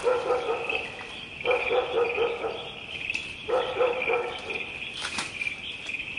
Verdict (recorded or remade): recorded